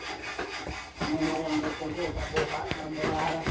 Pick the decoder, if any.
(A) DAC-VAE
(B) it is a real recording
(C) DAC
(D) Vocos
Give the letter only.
B